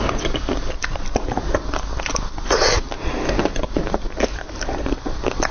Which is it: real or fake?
real